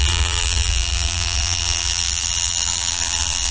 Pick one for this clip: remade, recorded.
remade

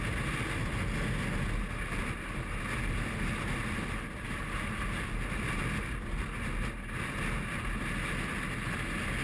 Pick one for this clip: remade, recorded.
recorded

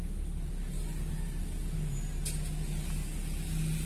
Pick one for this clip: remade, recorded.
recorded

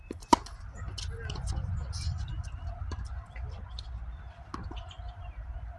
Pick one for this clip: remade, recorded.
recorded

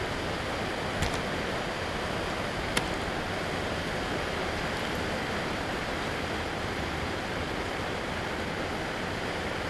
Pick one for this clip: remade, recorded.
recorded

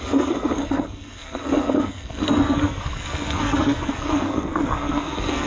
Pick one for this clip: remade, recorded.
remade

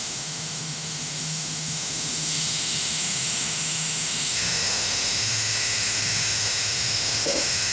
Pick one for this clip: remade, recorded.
remade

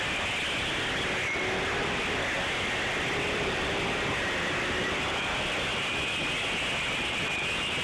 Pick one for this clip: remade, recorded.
recorded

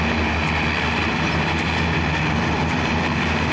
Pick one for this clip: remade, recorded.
recorded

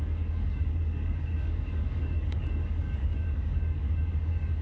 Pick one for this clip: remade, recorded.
remade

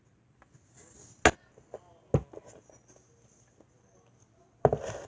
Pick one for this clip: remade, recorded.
recorded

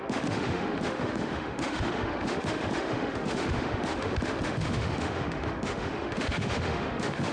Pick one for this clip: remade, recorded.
remade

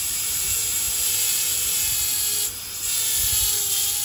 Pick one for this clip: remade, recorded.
recorded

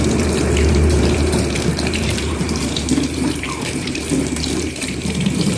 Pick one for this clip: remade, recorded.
remade